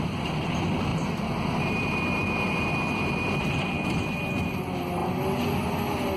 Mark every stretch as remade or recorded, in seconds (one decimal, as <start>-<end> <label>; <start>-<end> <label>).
0.0-0.9 recorded; 0.9-4.0 remade; 4.0-6.2 recorded